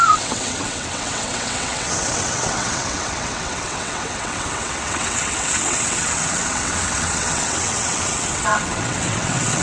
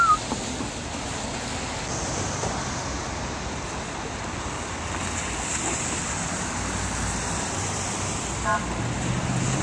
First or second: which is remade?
first